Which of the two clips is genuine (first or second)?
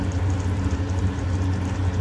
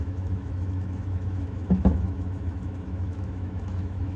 first